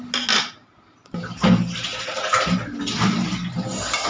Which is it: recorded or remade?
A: recorded